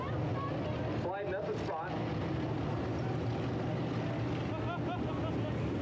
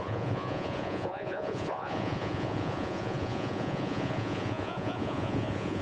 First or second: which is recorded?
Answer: first